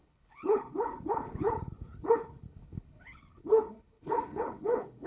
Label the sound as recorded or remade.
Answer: remade